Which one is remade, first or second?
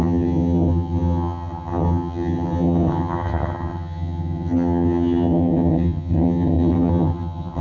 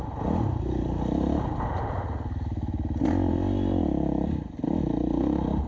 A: first